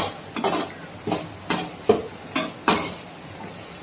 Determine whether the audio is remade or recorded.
recorded